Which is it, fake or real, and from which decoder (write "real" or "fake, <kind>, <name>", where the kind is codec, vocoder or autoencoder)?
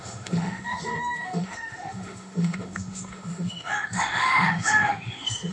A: fake, autoencoder, DAC-VAE